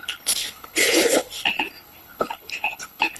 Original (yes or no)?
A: no